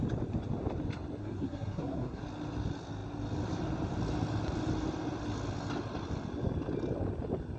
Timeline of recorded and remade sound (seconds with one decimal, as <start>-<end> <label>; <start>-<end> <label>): 0.0-1.2 recorded; 1.2-2.2 remade; 2.2-7.6 recorded